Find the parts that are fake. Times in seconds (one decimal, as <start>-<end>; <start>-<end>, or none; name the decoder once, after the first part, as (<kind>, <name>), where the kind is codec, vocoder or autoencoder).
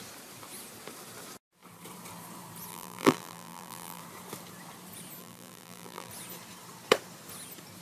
2.7-4.0 (vocoder, BigVGAN v2); 5.2-6.1